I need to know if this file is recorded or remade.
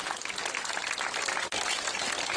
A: recorded